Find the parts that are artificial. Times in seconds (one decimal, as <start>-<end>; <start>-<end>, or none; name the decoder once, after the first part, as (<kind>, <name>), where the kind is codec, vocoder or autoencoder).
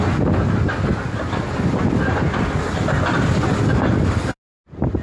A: none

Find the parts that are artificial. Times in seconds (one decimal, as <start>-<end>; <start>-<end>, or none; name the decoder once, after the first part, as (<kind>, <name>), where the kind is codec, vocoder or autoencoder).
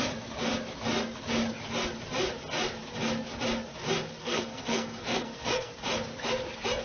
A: 4.2-5.7 (codec, SNAC)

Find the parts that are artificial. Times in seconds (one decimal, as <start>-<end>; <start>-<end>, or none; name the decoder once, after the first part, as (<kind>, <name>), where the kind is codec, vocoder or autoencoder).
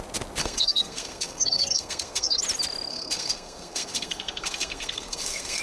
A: 0.4-2.4 (codec, SNAC); 2.9-5.6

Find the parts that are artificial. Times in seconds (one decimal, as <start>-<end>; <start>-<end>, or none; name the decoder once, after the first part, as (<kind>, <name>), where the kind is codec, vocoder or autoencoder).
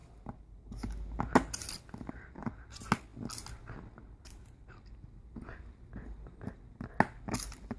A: none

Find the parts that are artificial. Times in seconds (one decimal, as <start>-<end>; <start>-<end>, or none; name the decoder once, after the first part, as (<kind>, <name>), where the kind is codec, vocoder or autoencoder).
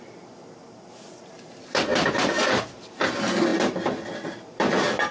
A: none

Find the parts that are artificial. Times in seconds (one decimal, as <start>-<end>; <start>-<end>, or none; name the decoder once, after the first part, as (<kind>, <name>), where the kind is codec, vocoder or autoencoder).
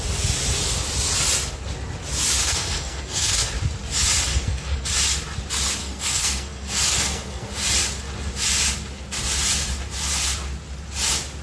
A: 2.4-3.5 (codec, SNAC); 4.3-4.9; 5.8-7.5